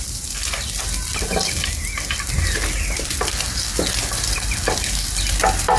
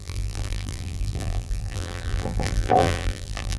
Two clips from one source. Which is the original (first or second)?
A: first